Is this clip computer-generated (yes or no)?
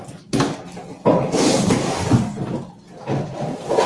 no